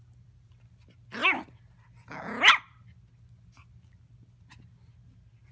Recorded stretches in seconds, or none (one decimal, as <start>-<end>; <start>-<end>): 0.0-5.5